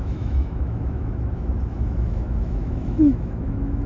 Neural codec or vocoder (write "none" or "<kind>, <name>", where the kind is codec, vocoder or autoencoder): autoencoder, DAC-VAE